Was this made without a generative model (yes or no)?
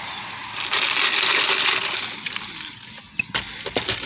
yes